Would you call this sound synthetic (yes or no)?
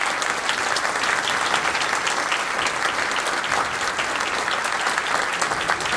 no